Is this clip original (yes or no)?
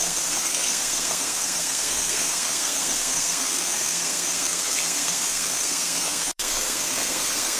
no